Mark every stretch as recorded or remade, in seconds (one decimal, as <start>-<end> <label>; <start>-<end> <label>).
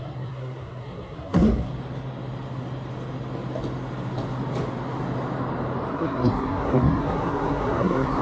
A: 0.0-1.7 remade; 1.7-5.9 recorded; 5.9-8.2 remade